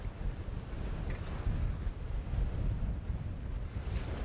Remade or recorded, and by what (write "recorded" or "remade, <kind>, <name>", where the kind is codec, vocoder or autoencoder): recorded